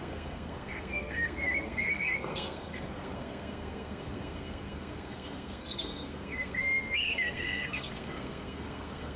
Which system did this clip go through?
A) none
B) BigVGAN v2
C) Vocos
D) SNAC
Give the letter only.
D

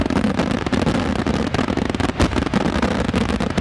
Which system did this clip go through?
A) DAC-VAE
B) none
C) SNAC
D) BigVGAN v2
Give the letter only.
B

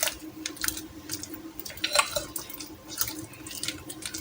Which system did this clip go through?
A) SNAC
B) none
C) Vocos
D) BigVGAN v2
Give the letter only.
B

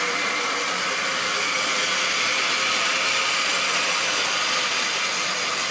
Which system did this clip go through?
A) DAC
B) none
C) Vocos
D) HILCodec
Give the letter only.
B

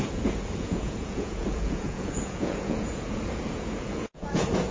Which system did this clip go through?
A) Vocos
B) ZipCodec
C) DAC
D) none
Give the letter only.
A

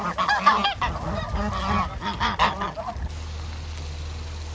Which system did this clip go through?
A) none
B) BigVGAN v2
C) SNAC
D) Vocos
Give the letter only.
A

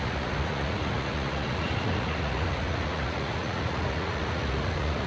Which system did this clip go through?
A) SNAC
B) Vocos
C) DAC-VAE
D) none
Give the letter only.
B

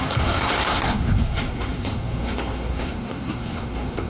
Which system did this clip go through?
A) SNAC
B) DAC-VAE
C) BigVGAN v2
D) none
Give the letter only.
A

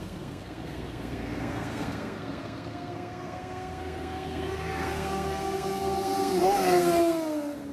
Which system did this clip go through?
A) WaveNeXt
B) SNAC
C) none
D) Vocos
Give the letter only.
B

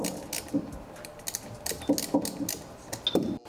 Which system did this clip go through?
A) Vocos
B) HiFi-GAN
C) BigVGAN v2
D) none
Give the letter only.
D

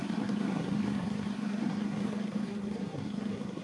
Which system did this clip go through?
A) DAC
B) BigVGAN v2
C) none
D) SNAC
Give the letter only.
D